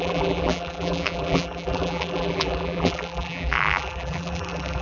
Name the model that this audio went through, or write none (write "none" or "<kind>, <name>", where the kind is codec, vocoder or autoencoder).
vocoder, BigVGAN v2